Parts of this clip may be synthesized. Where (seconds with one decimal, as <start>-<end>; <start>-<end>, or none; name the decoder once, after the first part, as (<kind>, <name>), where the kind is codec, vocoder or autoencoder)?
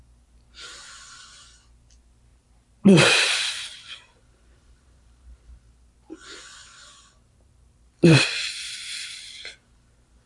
2.3-5.7 (vocoder, BigVGAN v2); 6.6-8.8